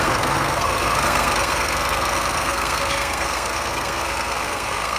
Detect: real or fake fake